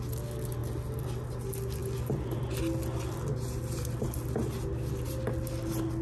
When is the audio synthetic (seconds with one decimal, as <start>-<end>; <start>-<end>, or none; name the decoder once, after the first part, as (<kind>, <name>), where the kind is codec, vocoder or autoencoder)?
none